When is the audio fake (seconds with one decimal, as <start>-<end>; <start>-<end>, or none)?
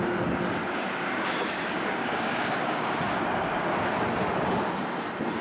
0.6-3.8